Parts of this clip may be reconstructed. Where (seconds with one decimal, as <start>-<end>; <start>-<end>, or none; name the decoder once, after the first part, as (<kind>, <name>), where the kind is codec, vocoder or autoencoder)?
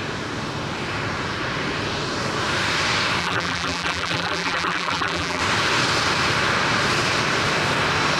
3.2-5.4 (vocoder, BigVGAN v2)